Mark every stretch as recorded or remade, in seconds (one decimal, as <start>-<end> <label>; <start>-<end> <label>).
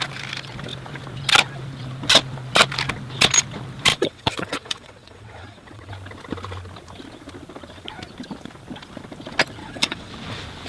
0.0-3.9 recorded; 3.9-5.9 remade; 5.9-9.6 recorded; 9.6-10.1 remade; 10.1-10.7 recorded